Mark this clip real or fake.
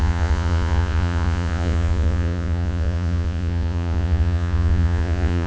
fake